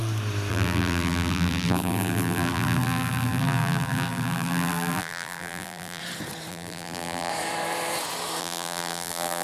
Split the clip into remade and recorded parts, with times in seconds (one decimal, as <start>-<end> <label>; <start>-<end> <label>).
0.0-0.5 recorded; 0.5-6.0 remade; 6.0-6.5 recorded; 6.5-7.3 remade; 7.3-8.4 recorded; 8.4-9.4 remade